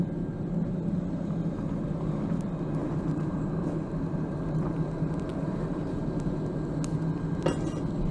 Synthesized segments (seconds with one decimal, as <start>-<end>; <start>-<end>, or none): 2.8-4.6; 5.3-6.0